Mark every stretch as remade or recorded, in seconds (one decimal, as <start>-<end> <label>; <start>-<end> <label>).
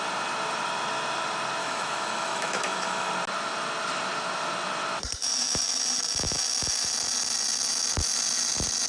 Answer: 0.0-1.6 recorded; 1.6-3.1 remade; 3.1-8.9 recorded